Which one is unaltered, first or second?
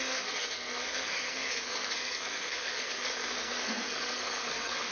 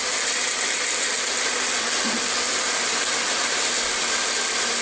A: second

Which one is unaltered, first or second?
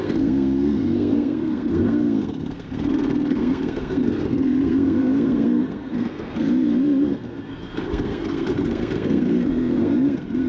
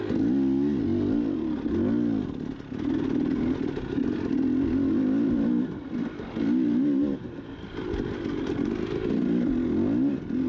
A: second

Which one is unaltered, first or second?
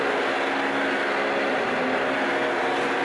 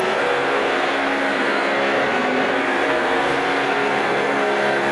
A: first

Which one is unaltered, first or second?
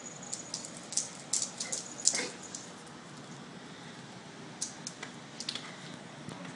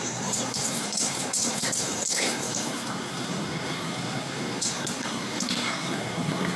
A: first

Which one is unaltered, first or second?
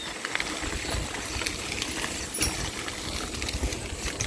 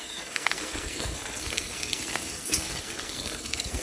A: first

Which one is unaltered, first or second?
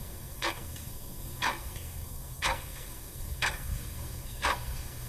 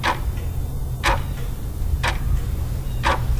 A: second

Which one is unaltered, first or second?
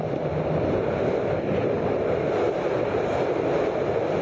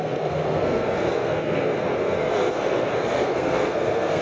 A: first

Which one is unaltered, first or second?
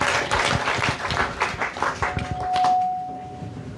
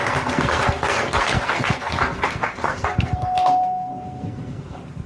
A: first